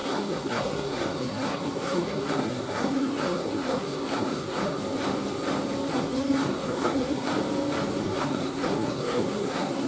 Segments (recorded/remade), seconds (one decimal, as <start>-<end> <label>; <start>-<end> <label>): 0.0-4.8 remade; 4.8-5.9 recorded; 5.9-7.3 remade; 7.3-8.0 recorded; 8.0-9.9 remade